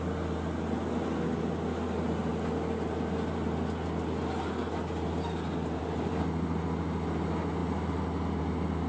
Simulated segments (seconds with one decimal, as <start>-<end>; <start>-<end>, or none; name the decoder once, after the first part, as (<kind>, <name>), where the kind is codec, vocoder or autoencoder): none